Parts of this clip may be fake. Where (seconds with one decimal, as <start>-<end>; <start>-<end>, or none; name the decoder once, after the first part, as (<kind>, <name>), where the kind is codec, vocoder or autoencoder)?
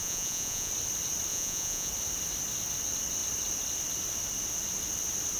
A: 0.0-0.7 (vocoder, Vocos); 1.3-1.9